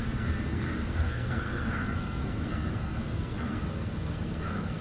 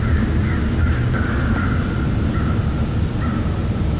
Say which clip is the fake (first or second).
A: first